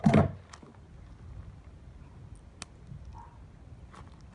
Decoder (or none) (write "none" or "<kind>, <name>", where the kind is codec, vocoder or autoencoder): none